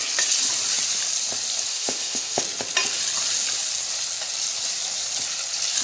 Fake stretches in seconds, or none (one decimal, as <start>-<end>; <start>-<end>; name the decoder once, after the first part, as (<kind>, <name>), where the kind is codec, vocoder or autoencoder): 1.7-2.4 (autoencoder, DAC-VAE)

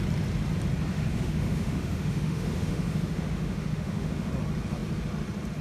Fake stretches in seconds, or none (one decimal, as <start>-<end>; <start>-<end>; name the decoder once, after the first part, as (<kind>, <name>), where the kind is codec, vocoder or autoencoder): 0.9-4.3 (autoencoder, DAC-VAE)

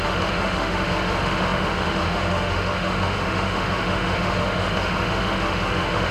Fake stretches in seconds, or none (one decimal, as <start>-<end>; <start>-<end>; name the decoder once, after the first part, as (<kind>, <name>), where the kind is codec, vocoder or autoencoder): 0.0-6.1 (autoencoder, DAC-VAE)

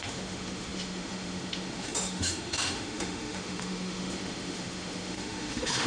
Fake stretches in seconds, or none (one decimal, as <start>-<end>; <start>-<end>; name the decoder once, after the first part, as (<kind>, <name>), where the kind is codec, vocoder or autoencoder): 0.0-5.9 (autoencoder, DAC-VAE)